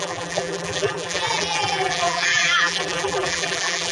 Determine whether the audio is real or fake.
fake